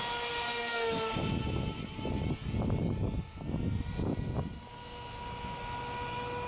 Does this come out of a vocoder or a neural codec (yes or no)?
no